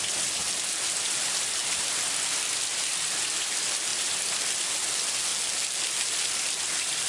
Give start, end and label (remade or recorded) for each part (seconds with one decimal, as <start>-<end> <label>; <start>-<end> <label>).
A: 0.0-0.4 remade; 0.4-0.9 recorded; 0.9-5.3 remade; 5.3-6.1 recorded; 6.1-7.1 remade